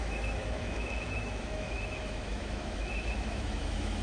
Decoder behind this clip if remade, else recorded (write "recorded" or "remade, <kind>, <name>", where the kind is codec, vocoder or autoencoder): remade, autoencoder, DAC-VAE